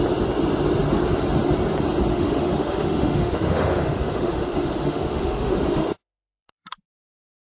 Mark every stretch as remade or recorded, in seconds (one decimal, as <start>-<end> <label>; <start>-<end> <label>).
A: 0.0-2.1 recorded; 2.1-6.6 remade; 6.6-7.5 recorded